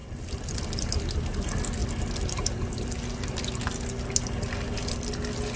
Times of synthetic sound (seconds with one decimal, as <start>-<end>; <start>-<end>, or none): none